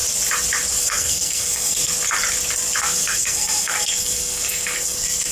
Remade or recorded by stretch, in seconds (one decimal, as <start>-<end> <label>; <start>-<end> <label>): 0.0-0.8 recorded; 0.8-1.9 remade; 1.9-2.8 recorded; 2.8-5.3 remade